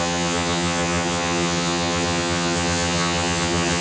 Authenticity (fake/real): fake